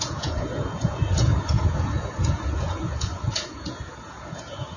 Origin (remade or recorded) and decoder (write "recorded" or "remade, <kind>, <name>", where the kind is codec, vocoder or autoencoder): remade, vocoder, Vocos